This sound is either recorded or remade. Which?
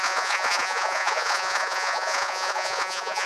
remade